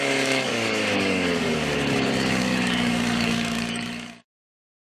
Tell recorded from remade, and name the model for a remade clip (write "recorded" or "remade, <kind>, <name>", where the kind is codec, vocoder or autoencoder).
remade, codec, DAC